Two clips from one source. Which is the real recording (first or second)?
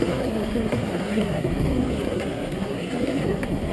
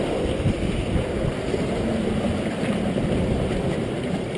second